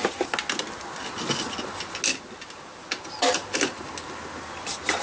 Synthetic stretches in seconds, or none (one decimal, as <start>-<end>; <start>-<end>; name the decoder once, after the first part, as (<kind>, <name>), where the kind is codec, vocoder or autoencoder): none